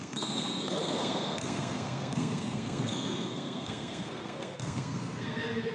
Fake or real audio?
fake